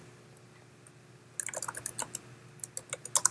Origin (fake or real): real